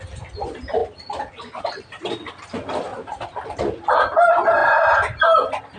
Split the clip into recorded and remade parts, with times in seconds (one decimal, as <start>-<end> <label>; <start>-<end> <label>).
0.0-2.9 recorded; 2.9-3.6 remade; 3.6-4.6 recorded; 4.6-5.2 remade; 5.2-5.8 recorded